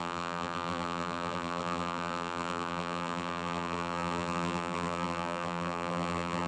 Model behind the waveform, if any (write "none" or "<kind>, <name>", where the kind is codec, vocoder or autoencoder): vocoder, BigVGAN v2